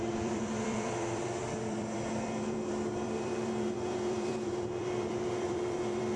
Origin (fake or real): fake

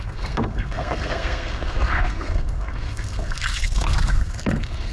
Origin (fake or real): fake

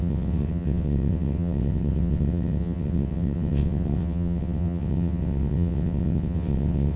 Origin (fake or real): fake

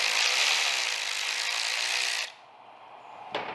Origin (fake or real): real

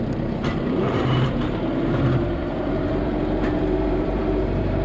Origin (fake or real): fake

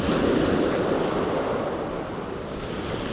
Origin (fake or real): real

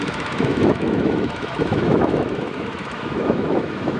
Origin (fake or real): fake